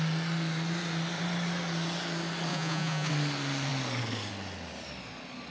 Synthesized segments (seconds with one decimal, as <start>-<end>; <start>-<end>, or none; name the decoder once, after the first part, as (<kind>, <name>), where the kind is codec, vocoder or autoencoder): 2.5-3.1 (vocoder, Vocos)